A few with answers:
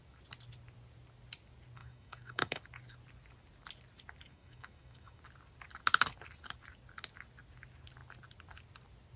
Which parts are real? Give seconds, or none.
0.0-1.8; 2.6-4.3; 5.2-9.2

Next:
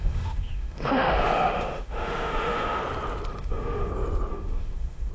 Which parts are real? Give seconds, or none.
2.8-3.3; 3.9-4.3

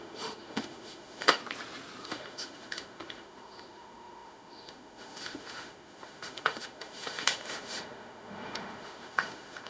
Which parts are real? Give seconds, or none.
1.4-2.0

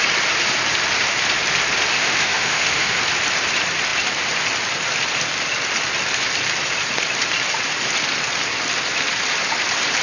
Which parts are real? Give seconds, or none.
0.0-1.9; 3.0-10.0

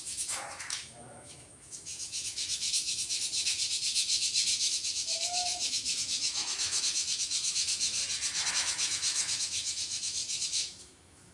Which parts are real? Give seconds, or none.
8.0-8.5

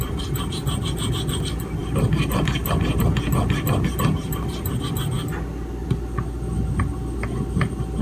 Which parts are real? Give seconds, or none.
0.0-8.0